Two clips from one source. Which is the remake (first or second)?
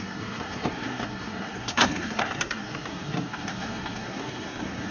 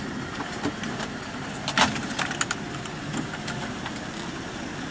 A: first